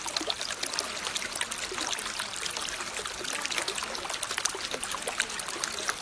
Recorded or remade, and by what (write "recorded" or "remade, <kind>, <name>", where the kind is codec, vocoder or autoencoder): recorded